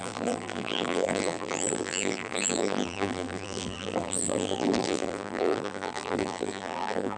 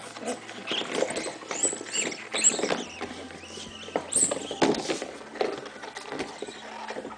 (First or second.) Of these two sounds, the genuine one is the second